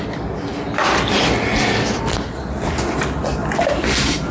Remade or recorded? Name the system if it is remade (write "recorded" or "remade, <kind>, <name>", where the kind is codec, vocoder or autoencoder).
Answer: recorded